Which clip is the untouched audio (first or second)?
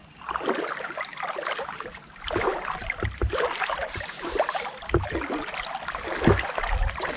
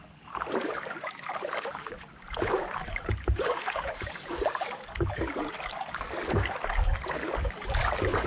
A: first